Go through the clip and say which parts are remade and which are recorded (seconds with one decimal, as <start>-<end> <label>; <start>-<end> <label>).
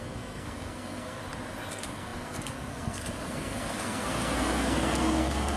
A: 0.0-1.2 remade; 1.2-1.7 recorded; 1.7-5.6 remade